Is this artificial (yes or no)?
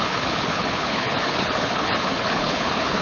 yes